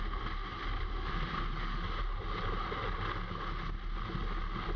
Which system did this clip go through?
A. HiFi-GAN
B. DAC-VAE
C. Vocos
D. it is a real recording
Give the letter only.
D